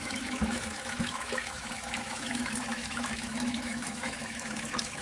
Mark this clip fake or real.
fake